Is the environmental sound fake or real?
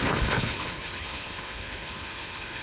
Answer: fake